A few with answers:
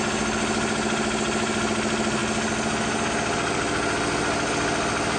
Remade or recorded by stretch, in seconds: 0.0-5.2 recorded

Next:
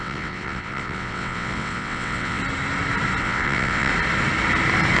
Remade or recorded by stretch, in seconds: 0.0-2.4 remade; 2.4-3.2 recorded; 3.2-3.9 remade; 3.9-5.0 recorded

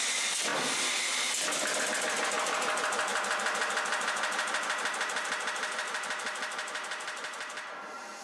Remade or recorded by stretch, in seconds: 0.0-8.2 recorded

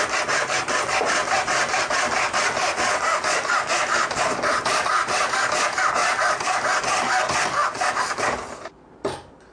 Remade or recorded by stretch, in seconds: 0.0-9.5 recorded

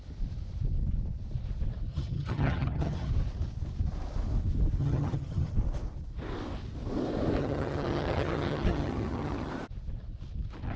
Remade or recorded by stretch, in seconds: 0.0-1.9 recorded; 1.9-3.1 remade; 3.1-4.8 recorded; 4.8-5.5 remade; 5.5-7.4 recorded; 7.4-9.5 remade; 9.5-10.8 recorded

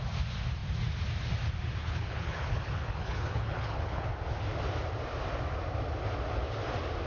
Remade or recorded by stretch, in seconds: 0.0-1.8 recorded; 1.8-4.1 remade; 4.1-7.1 recorded